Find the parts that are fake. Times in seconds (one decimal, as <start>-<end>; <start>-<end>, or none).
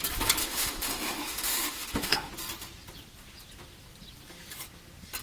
0.4-2.3